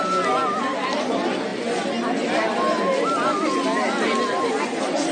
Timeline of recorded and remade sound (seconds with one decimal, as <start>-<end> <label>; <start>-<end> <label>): 0.0-5.1 recorded